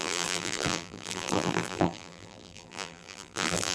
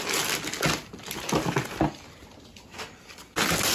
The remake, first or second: first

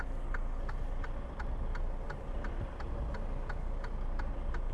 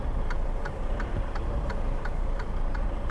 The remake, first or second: second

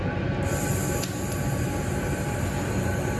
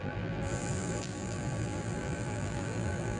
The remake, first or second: second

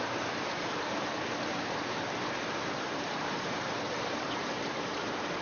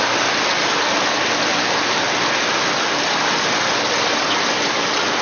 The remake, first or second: first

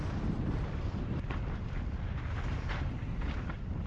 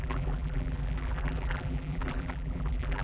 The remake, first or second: second